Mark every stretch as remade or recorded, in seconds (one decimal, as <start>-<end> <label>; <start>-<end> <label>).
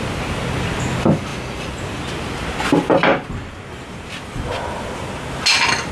0.0-5.9 recorded